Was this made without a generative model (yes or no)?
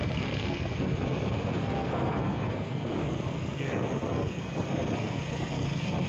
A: no